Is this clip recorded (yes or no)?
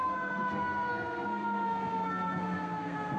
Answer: no